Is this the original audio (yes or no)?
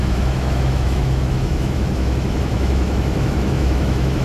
no